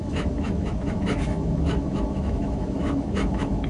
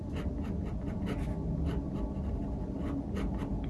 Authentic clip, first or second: second